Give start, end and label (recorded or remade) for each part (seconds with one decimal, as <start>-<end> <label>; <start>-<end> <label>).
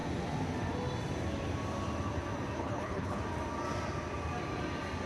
0.0-2.6 recorded; 2.6-3.2 remade; 3.2-5.1 recorded